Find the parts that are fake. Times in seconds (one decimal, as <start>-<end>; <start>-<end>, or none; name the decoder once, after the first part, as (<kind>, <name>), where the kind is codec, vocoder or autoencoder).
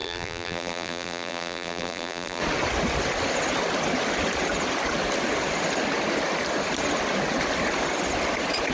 0.0-2.4 (vocoder, BigVGAN v2)